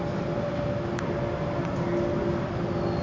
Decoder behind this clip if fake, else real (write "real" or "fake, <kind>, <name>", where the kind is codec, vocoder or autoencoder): real